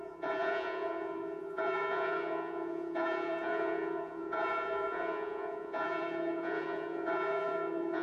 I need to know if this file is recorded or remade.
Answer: remade